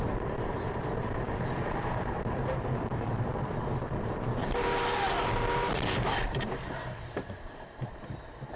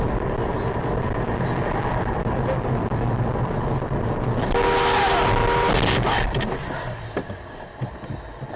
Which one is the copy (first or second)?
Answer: first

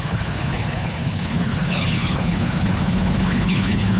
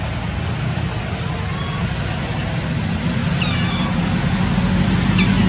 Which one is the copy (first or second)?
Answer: first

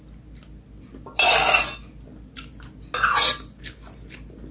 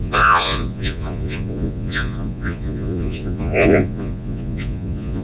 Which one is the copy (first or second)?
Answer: second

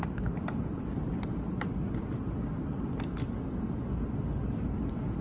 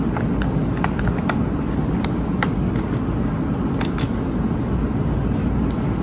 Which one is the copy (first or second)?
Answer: first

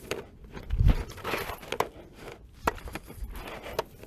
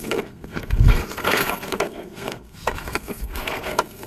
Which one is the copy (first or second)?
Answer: second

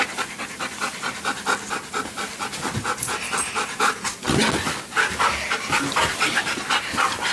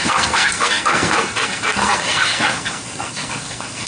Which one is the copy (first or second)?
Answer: second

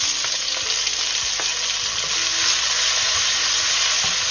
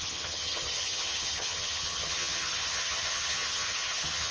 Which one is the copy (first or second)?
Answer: second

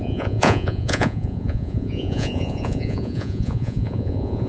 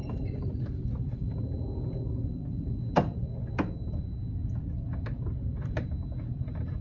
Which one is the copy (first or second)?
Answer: first